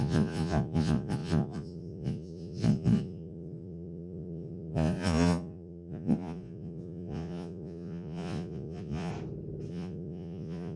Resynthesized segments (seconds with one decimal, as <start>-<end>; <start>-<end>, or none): 0.0-9.1; 9.7-10.8